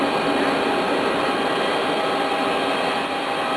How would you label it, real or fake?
real